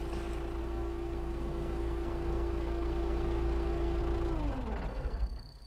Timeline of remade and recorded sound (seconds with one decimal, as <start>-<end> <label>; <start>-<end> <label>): 0.0-0.6 recorded; 0.6-4.0 remade; 4.0-4.9 recorded; 4.9-5.7 remade